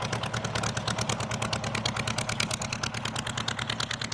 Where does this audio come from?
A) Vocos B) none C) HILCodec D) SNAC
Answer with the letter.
B